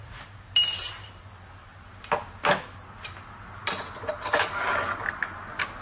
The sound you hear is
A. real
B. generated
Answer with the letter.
A